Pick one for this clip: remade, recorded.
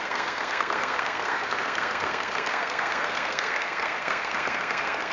remade